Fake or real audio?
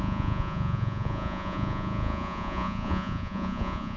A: fake